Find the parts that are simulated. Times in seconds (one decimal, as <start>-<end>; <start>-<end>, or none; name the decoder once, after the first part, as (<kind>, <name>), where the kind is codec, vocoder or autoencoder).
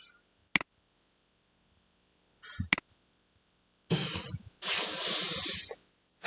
none